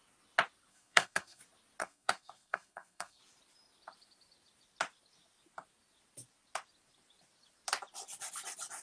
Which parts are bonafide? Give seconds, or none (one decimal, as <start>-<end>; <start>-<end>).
0.0-0.7; 1.4-1.8; 3.2-8.8